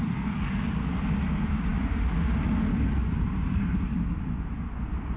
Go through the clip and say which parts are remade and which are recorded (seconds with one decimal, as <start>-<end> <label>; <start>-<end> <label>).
0.0-5.2 recorded